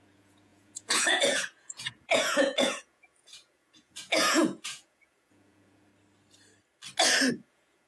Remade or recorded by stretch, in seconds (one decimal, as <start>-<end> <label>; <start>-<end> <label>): 0.0-5.9 remade; 5.9-7.3 recorded; 7.3-7.9 remade